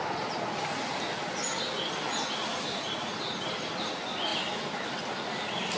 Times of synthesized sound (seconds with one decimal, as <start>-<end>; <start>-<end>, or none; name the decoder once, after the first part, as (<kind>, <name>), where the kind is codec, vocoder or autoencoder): 4.3-5.8 (vocoder, BigVGAN v2)